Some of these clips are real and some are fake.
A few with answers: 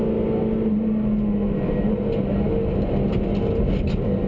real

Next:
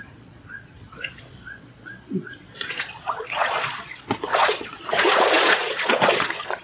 fake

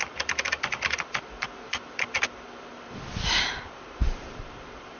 real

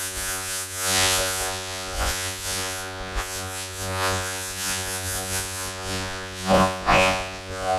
fake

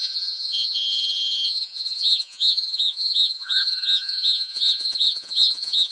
fake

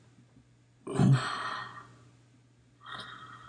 real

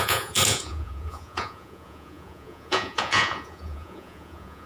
fake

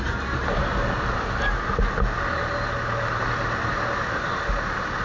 real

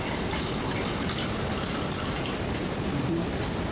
real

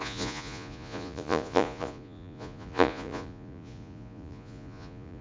fake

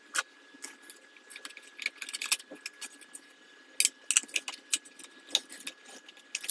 real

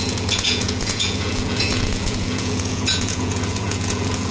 fake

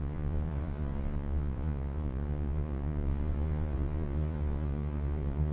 fake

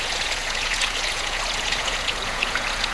fake